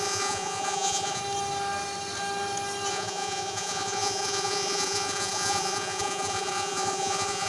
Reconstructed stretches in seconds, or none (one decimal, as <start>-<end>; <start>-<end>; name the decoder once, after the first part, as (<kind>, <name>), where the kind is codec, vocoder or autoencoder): 0.0-1.2 (vocoder, Vocos); 2.9-7.5